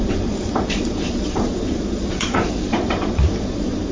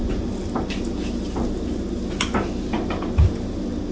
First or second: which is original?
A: second